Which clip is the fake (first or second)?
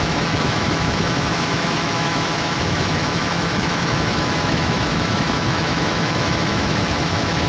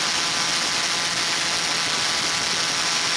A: first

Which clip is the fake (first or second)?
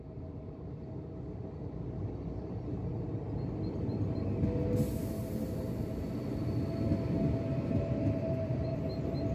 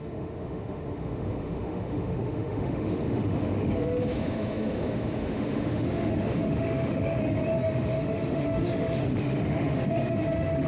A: second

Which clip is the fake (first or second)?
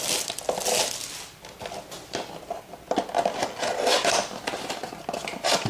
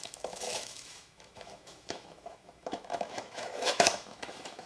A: second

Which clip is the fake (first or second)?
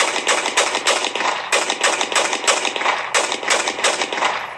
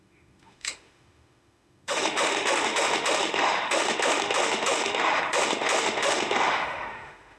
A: second